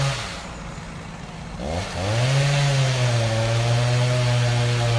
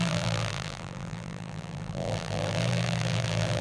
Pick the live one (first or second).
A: first